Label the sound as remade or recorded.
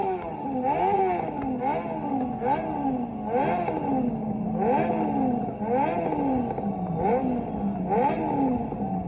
recorded